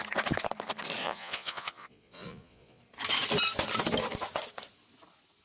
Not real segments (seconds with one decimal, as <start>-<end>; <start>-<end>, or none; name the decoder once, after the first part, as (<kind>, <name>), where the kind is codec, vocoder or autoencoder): 1.0-2.8 (vocoder, Vocos)